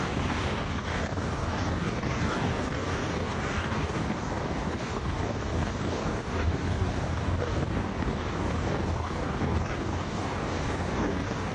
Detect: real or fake fake